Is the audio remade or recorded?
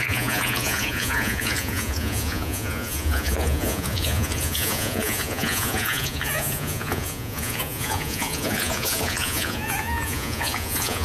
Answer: remade